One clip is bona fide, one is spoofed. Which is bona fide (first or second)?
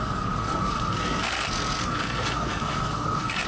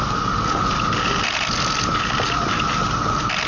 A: second